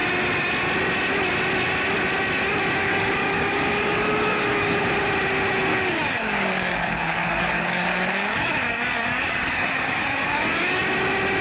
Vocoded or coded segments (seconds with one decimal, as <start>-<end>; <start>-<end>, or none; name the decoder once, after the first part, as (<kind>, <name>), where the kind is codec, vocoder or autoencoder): 2.8-4.9 (codec, DAC); 5.7-10.8